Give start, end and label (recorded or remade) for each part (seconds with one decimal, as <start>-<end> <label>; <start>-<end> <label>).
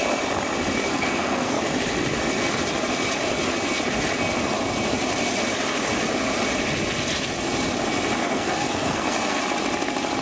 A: 0.0-0.9 recorded; 0.9-1.6 remade; 1.6-8.2 recorded; 8.2-9.4 remade; 9.4-10.2 recorded